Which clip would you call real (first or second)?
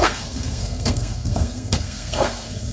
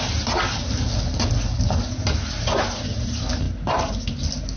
second